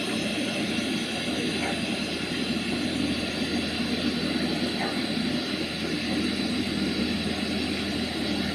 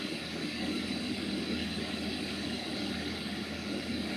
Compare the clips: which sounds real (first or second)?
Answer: first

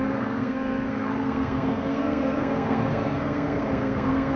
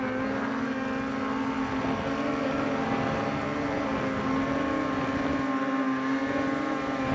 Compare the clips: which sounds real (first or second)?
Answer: second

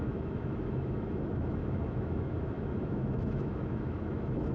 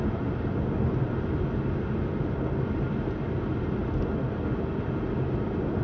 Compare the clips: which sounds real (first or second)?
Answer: second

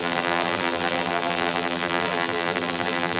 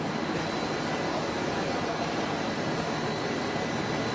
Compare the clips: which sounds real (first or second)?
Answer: second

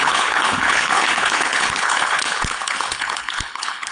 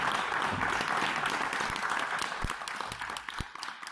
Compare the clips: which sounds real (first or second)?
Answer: second